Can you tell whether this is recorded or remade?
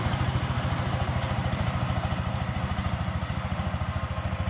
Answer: recorded